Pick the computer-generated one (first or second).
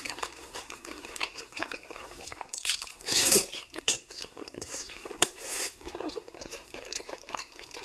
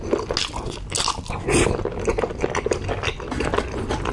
first